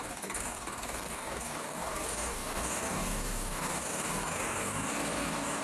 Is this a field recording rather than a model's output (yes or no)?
no